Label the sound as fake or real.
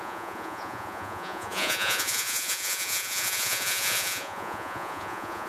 fake